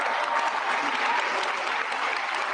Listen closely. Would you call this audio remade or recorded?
recorded